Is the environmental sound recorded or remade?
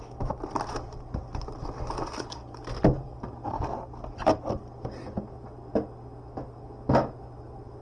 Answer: recorded